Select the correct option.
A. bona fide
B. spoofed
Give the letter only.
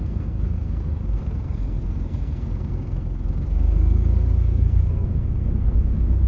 B